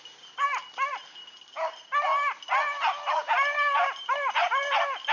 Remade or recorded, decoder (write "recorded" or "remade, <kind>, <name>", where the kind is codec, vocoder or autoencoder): recorded